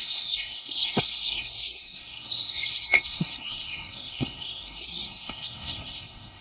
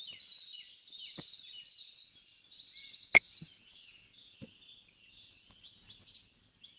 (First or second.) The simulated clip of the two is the first